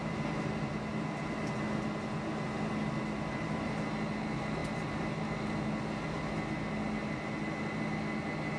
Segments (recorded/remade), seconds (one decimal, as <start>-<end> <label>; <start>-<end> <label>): 0.0-8.6 recorded